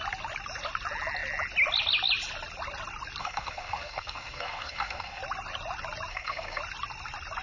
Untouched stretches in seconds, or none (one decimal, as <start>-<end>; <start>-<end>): 0.0-3.2; 5.2-6.1; 6.6-7.4